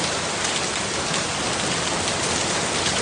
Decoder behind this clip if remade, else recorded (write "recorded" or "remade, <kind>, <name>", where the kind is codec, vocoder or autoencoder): recorded